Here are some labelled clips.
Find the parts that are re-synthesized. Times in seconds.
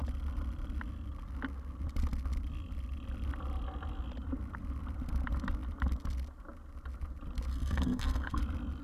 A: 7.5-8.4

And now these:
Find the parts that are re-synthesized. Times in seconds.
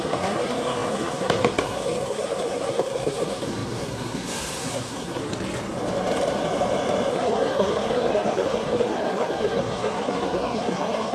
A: 0.0-5.2; 7.1-11.1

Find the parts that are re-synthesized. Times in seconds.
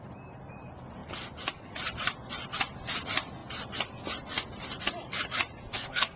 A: 5.7-6.2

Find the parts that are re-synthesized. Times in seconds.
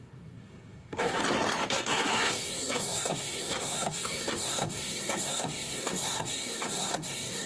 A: 0.0-1.2; 1.7-7.5